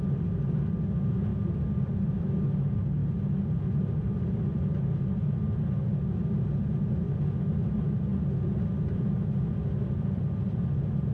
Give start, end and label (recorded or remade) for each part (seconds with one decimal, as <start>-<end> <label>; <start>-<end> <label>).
0.0-3.0 recorded; 3.0-4.3 remade; 4.3-11.1 recorded